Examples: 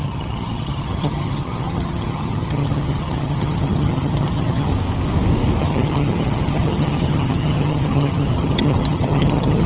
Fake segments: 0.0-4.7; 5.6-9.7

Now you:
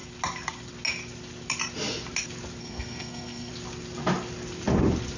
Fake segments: 2.6-3.5

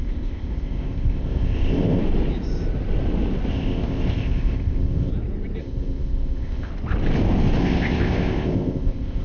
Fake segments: 0.0-2.0; 3.5-5.1; 5.6-6.7; 7.6-9.2

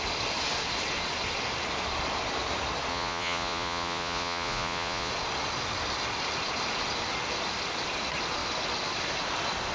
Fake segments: 2.9-5.1

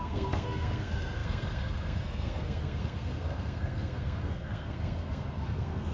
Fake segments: 0.0-5.9

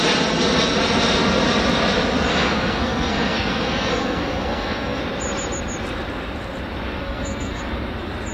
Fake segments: 2.3-5.0; 7.0-7.6